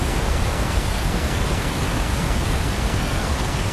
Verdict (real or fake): fake